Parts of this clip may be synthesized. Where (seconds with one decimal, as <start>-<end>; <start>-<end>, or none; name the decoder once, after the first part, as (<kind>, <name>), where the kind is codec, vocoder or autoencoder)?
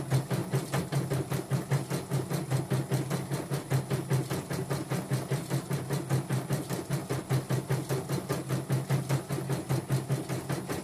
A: none